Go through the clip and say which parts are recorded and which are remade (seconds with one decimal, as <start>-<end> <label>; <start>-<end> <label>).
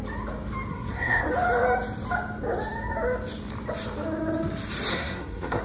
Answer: 0.0-0.7 recorded; 0.7-1.3 remade; 1.3-4.9 recorded; 4.9-5.6 remade